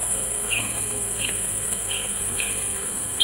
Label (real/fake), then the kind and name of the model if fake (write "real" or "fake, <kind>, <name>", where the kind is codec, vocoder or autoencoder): fake, codec, SNAC